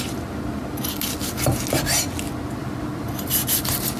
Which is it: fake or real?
real